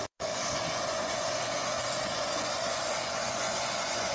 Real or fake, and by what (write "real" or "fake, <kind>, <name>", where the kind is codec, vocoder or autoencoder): fake, vocoder, Vocos